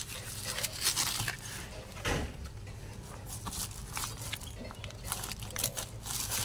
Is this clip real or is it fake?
real